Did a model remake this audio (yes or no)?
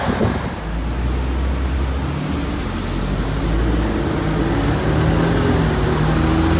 no